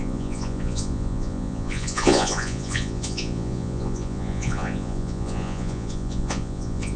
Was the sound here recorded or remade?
remade